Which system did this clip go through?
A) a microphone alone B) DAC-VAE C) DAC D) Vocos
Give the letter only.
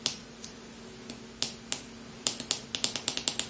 A